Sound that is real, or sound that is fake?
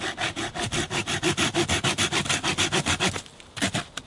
real